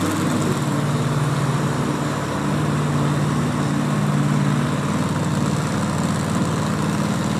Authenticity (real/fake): real